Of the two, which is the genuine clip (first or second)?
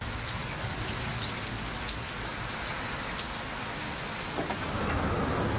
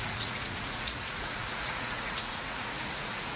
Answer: first